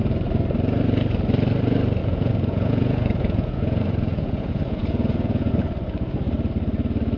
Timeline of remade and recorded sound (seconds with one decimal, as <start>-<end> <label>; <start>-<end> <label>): 0.0-2.0 recorded; 2.0-5.5 remade; 5.5-7.2 recorded